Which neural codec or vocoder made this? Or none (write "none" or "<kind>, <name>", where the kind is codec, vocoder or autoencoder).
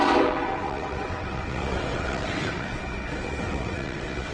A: vocoder, WaveNeXt